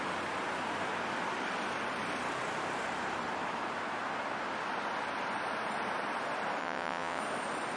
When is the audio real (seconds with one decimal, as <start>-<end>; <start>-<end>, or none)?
0.0-6.6; 7.2-7.8

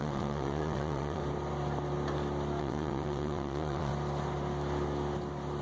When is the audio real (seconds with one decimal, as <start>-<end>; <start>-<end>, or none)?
1.2-2.6; 3.9-5.6